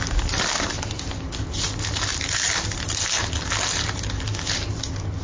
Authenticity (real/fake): real